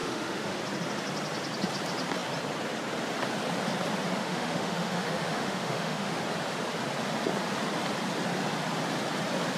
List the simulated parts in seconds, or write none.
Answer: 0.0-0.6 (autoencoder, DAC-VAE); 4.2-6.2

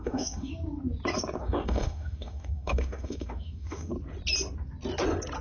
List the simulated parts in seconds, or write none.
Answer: 0.0-0.5 (autoencoder, DAC-VAE); 1.4-3.9